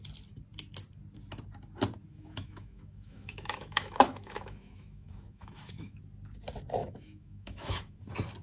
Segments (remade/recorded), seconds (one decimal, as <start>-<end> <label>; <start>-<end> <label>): 0.0-2.1 recorded; 2.1-6.0 remade; 6.0-6.8 recorded; 6.8-8.0 remade; 8.0-8.4 recorded